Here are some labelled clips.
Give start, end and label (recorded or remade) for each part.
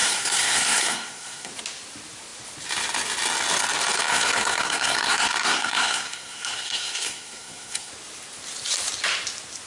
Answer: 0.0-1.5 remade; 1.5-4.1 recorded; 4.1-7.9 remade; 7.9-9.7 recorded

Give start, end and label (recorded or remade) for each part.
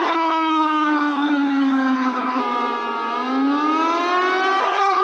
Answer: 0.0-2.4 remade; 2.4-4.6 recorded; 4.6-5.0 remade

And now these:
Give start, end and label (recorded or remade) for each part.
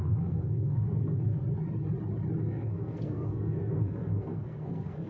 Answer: 0.0-1.4 remade; 1.4-2.4 recorded; 2.4-5.1 remade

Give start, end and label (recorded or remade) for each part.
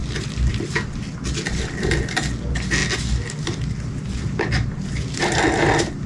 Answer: 0.0-6.1 recorded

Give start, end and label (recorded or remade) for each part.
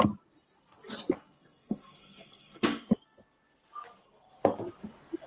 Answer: 0.0-1.2 recorded; 1.2-2.9 remade; 2.9-5.3 recorded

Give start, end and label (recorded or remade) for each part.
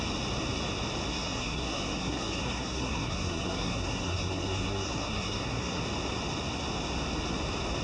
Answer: 0.0-1.1 recorded; 1.1-5.8 remade; 5.8-7.8 recorded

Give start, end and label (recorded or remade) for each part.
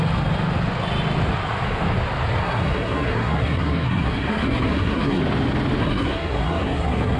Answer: 0.0-2.4 recorded; 2.4-5.2 remade; 5.2-5.8 recorded; 5.8-7.2 remade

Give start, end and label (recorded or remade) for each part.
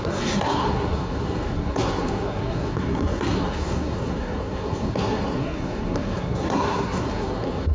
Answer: 0.0-7.7 remade